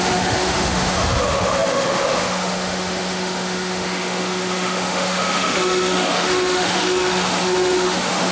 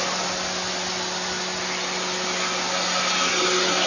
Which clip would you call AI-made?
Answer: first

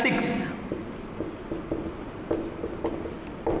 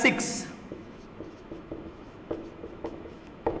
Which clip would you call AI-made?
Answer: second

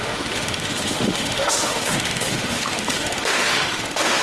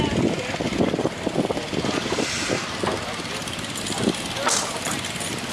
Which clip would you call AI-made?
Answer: first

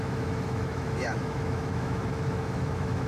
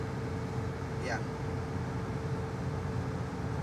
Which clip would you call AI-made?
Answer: first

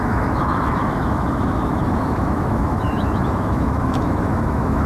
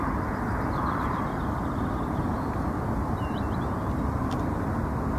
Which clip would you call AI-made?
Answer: first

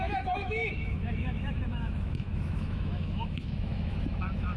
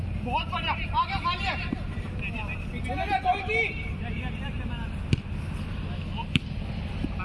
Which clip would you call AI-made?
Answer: first